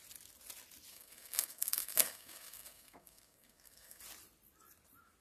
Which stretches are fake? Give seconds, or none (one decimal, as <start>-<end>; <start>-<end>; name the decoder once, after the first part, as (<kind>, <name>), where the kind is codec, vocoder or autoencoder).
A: 0.9-4.0 (codec, SNAC)